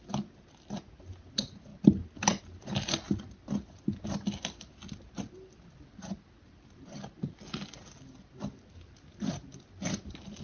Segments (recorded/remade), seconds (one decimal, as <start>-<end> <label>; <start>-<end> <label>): 0.0-10.4 recorded